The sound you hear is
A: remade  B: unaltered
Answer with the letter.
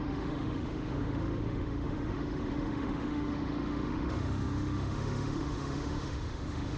A